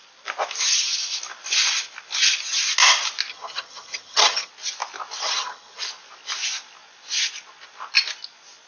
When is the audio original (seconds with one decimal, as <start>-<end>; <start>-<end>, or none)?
0.0-3.3; 4.5-5.2; 5.8-8.7